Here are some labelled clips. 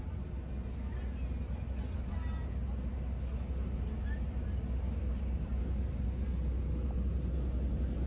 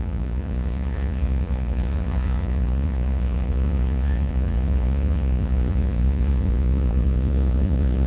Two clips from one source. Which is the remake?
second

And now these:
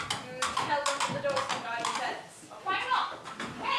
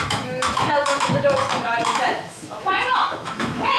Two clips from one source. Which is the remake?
second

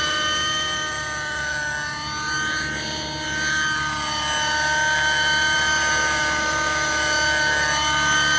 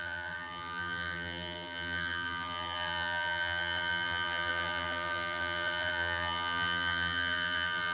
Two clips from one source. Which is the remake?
second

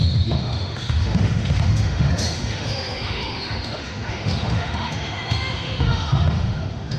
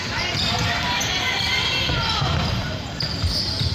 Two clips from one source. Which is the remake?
first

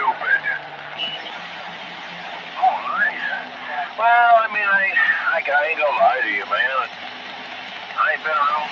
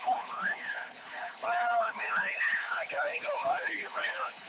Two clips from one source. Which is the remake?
second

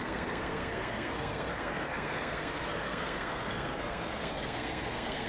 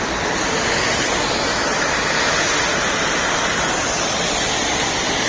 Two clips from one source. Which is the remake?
first